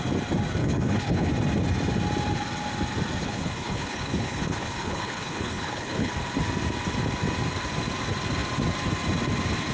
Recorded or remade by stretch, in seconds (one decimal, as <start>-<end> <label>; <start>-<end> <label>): 0.0-0.6 recorded; 0.6-1.3 remade; 1.3-3.2 recorded; 3.2-6.1 remade; 6.1-9.7 recorded